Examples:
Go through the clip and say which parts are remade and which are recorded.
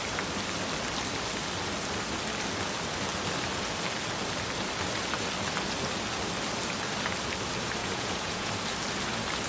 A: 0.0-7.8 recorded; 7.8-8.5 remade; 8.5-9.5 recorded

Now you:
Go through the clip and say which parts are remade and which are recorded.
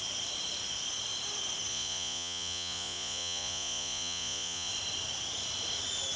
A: 0.0-1.7 recorded; 1.7-4.7 remade; 4.7-6.2 recorded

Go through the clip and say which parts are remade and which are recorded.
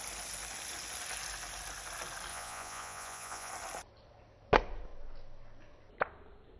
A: 0.0-2.3 recorded; 2.3-3.5 remade; 3.5-6.6 recorded